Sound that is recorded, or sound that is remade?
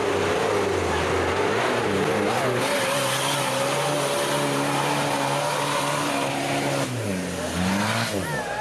recorded